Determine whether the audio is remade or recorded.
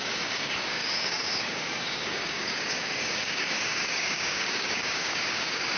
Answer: remade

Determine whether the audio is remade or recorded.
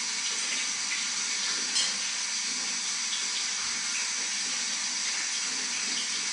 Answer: recorded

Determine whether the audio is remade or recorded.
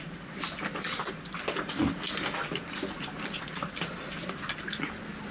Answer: recorded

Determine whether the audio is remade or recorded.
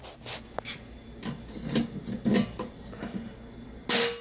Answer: recorded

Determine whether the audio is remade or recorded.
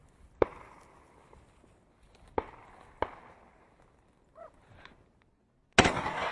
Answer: recorded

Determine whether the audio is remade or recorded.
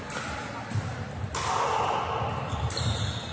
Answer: recorded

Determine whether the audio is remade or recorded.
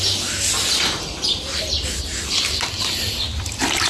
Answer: recorded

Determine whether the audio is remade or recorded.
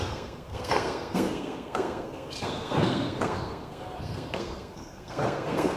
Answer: remade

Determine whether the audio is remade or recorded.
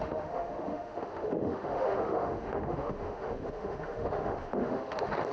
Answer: remade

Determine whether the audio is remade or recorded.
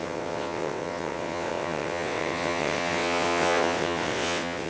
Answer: remade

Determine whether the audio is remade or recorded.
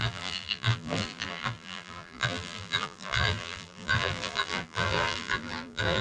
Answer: remade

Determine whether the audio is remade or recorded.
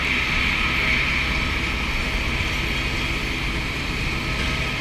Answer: recorded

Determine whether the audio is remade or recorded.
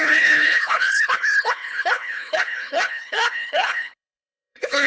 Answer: remade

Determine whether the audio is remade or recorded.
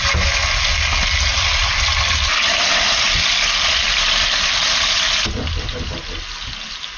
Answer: recorded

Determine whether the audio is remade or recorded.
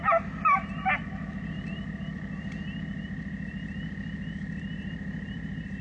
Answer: recorded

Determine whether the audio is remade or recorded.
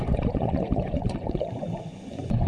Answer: remade